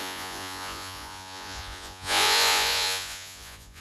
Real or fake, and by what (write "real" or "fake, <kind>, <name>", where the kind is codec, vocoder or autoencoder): fake, vocoder, Vocos